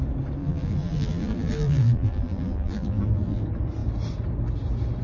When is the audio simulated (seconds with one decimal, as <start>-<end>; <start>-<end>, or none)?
0.4-3.4